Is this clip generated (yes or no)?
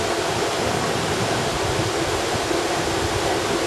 no